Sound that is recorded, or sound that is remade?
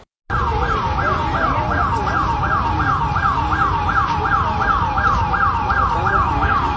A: recorded